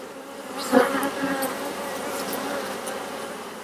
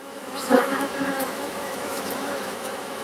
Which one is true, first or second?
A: first